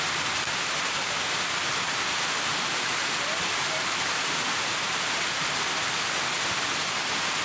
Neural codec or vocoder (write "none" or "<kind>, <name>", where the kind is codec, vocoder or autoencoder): none